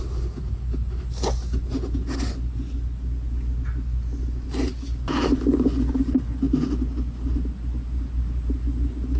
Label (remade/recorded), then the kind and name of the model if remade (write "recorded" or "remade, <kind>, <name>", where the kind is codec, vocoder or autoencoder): recorded